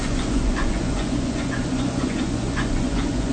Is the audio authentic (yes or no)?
no